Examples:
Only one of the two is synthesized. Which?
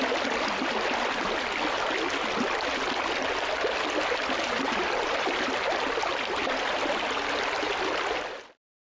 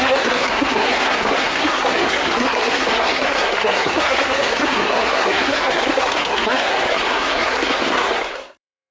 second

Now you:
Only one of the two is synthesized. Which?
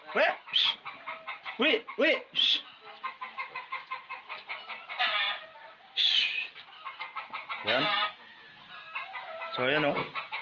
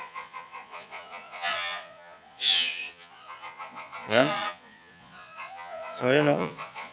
second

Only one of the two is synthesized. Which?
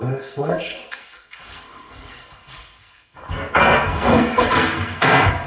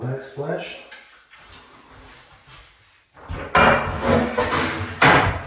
first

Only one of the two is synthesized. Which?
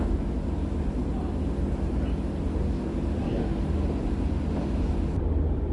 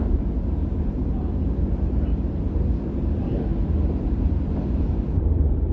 second